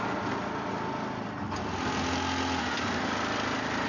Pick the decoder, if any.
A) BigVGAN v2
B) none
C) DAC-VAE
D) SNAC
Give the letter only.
B